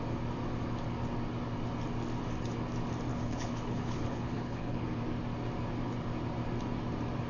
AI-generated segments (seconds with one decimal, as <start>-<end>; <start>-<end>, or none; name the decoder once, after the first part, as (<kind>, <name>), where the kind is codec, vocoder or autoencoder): 3.1-5.0 (codec, HILCodec)